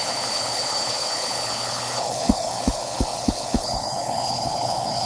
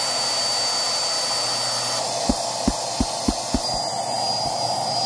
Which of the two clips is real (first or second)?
second